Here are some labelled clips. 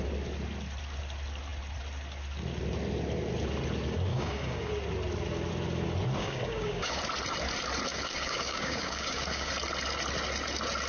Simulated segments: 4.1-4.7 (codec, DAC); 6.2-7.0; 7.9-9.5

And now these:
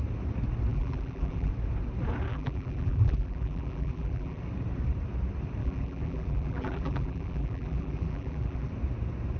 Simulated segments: 0.7-1.5 (vocoder, BigVGAN v2); 2.3-4.4; 5.6-8.7

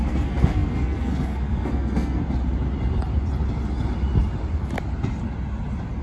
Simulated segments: 0.0-2.2 (codec, SNAC)

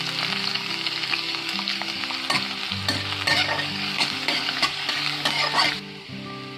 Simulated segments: 0.5-2.0 (codec, DAC); 3.3-5.3

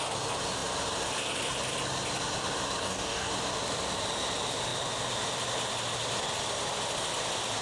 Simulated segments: 2.8-3.3 (codec, DAC)

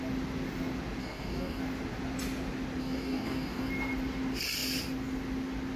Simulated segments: 1.0-1.6 (codec, DAC); 2.8-3.7

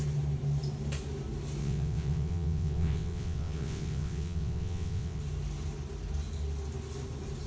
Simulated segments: 1.6-5.2 (vocoder, WaveNeXt)